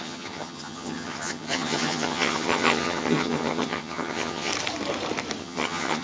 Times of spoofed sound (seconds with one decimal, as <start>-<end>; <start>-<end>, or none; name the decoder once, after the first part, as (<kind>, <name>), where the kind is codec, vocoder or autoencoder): 0.0-4.5 (vocoder, HiFi-GAN); 5.4-6.0